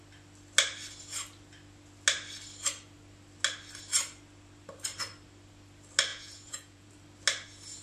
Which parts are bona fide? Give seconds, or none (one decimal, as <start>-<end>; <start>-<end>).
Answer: 0.0-6.1; 6.9-7.8